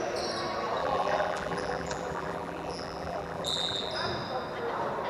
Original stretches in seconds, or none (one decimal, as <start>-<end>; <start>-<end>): 0.0-0.8; 3.9-5.1